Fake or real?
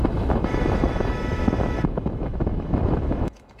fake